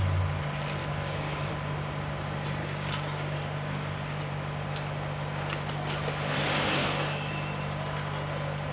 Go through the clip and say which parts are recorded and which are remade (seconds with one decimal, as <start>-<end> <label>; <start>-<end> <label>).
0.0-0.8 recorded; 0.8-1.5 remade; 1.5-2.6 recorded; 2.6-4.3 remade; 4.3-6.8 recorded; 6.8-7.3 remade; 7.3-8.7 recorded